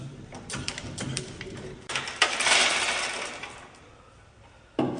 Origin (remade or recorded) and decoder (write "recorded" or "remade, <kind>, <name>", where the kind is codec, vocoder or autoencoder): recorded